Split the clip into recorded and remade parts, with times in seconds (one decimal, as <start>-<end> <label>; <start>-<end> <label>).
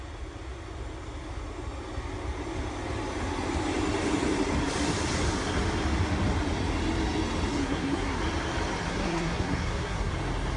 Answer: 0.0-7.6 recorded; 7.6-8.2 remade; 8.2-8.9 recorded; 8.9-10.1 remade; 10.1-10.6 recorded